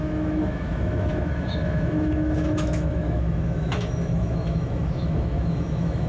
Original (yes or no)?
no